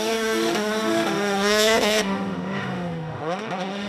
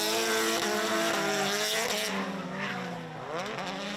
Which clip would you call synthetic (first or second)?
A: first